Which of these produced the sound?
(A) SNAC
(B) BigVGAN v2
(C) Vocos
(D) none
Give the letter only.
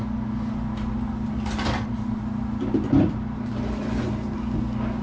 D